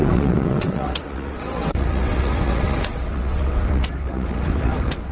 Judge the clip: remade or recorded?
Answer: remade